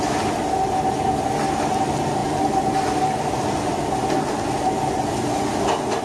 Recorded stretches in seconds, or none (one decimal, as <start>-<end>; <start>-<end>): 0.0-6.0